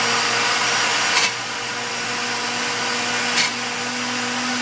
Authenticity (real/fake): real